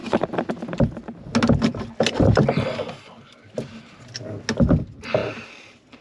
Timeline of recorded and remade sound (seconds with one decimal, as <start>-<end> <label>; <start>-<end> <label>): 0.0-5.2 recorded; 5.2-6.0 remade